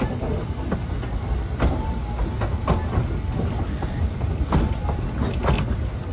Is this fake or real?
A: real